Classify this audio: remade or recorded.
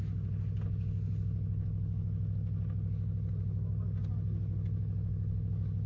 recorded